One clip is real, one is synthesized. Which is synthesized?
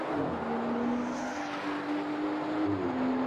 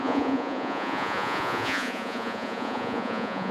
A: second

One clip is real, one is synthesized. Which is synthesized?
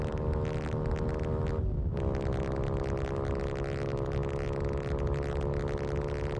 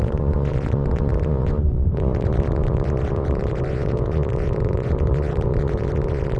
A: second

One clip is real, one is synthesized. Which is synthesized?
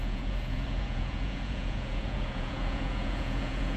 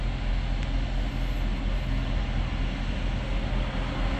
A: first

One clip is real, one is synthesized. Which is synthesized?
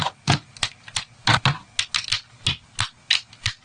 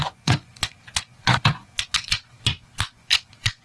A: second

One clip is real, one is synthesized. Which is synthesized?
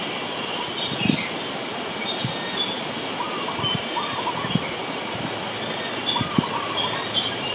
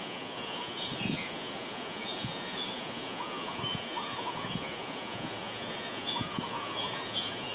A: second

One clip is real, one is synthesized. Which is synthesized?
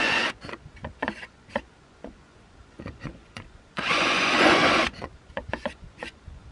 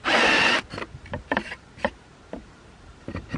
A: first